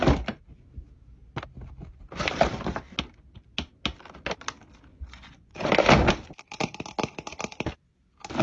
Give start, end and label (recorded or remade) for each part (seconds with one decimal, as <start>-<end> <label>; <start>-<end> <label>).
0.0-4.9 recorded; 4.9-5.7 remade; 5.7-8.4 recorded